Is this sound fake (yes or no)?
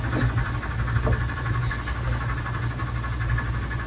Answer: no